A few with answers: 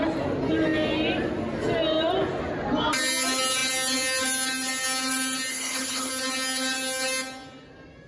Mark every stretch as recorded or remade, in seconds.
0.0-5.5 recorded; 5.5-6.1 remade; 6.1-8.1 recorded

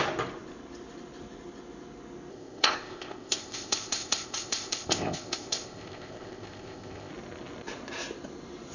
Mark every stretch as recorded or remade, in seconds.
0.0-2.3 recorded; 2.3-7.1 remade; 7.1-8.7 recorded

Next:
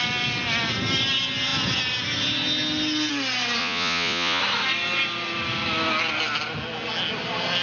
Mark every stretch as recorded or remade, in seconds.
0.0-3.6 recorded; 3.6-4.4 remade; 4.4-7.6 recorded

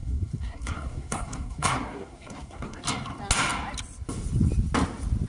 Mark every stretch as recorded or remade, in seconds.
0.0-2.8 remade; 2.8-5.3 recorded

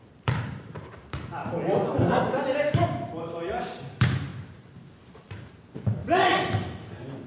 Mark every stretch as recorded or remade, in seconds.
0.0-1.4 remade; 1.4-2.7 recorded; 2.7-6.0 remade; 6.0-7.3 recorded